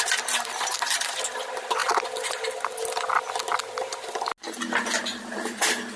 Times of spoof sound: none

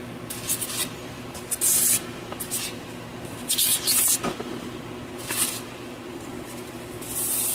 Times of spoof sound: none